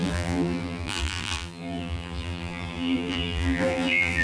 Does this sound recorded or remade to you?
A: remade